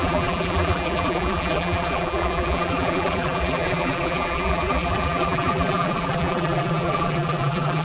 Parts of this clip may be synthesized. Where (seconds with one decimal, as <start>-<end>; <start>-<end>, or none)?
0.0-7.8